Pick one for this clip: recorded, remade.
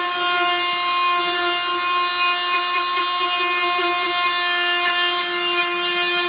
recorded